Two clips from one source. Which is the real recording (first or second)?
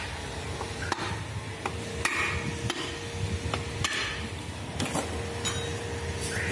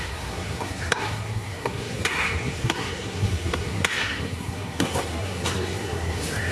first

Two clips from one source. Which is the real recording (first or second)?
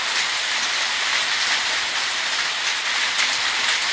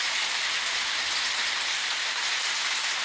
second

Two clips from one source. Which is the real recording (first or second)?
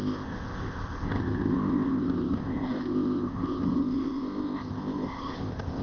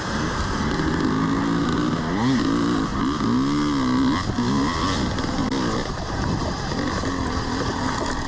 second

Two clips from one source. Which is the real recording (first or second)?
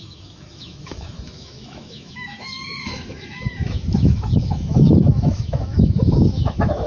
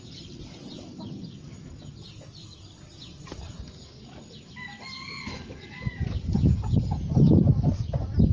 second